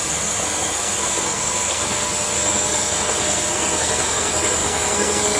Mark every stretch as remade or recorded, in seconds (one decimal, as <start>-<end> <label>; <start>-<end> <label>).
0.0-5.4 remade